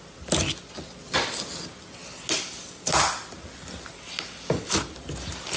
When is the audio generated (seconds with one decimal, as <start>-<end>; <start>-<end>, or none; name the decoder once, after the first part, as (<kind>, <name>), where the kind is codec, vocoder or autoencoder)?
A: none